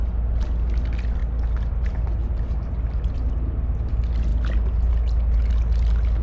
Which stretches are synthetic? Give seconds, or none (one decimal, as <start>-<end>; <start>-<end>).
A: none